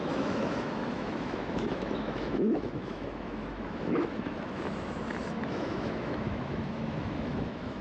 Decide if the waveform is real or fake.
fake